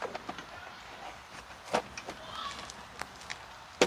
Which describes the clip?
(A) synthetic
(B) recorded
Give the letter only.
B